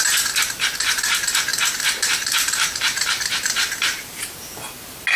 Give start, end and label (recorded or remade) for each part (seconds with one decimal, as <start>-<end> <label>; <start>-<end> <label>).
0.0-1.5 recorded; 1.5-4.6 remade; 4.6-5.2 recorded

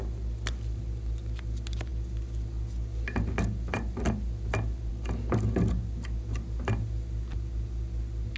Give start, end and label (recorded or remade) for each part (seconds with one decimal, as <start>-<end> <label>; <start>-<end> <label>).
0.0-8.4 recorded

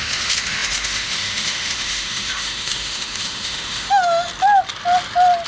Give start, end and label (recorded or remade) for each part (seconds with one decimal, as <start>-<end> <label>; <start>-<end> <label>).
0.0-4.3 remade; 4.3-5.5 recorded

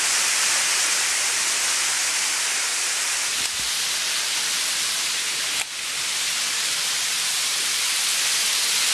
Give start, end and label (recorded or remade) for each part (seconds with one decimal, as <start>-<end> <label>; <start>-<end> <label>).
0.0-8.9 recorded

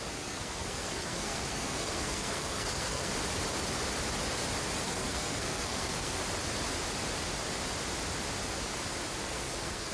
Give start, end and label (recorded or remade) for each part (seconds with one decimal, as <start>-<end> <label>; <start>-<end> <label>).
0.0-3.1 remade; 3.1-4.8 recorded; 4.8-6.2 remade; 6.2-9.2 recorded; 9.2-9.9 remade

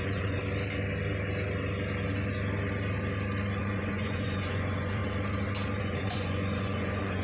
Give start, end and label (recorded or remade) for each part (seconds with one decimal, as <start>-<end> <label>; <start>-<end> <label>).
0.0-0.4 remade; 0.4-3.6 recorded; 3.6-5.0 remade; 5.0-5.8 recorded; 5.8-7.2 remade

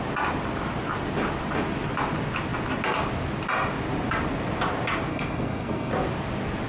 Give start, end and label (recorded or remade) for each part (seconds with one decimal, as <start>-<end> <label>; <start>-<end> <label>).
0.0-5.1 recorded; 5.1-5.9 remade; 5.9-6.7 recorded

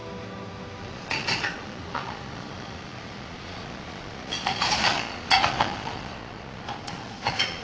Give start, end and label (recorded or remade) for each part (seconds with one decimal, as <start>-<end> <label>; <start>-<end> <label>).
0.0-0.8 recorded; 0.8-7.6 remade